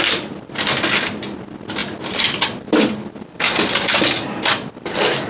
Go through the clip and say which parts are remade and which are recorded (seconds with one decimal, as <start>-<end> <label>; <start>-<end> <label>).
0.0-5.3 recorded